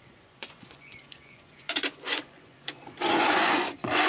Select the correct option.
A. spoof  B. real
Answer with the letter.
A